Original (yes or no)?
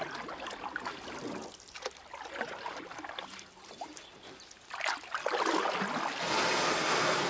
yes